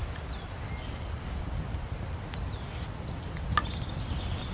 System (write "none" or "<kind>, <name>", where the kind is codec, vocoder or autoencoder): none